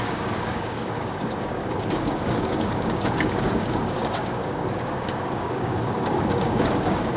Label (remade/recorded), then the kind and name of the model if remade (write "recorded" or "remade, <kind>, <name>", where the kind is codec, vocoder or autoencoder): remade, codec, DAC